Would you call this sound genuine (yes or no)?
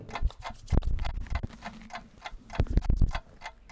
yes